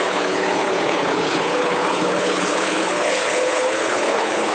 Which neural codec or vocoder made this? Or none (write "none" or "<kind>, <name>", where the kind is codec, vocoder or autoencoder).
codec, HILCodec